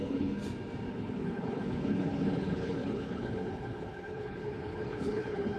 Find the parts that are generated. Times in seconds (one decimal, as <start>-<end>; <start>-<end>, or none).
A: 0.0-0.4; 0.9-5.6